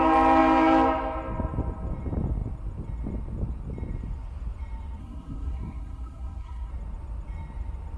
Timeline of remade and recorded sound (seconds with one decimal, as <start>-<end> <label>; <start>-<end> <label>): 0.0-5.0 recorded; 5.0-6.7 remade; 6.7-8.0 recorded